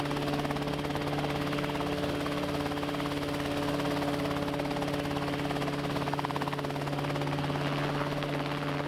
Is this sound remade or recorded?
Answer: recorded